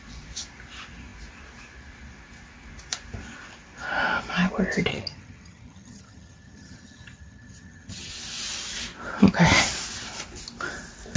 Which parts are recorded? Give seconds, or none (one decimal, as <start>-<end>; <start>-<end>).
0.0-4.9; 8.1-11.2